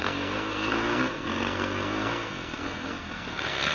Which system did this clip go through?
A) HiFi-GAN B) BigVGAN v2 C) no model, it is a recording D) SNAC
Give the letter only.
D